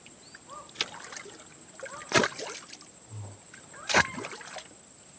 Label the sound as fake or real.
real